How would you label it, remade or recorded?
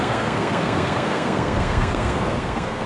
remade